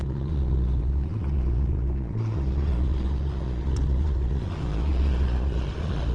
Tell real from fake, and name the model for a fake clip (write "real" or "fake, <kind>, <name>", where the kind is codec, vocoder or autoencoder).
fake, vocoder, Vocos